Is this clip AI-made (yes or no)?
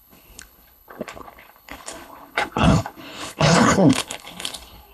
yes